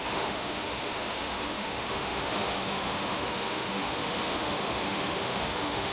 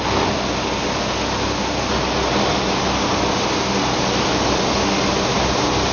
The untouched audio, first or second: second